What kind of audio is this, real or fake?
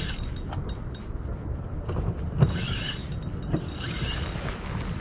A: real